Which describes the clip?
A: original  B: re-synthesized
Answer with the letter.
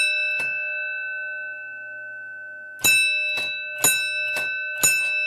A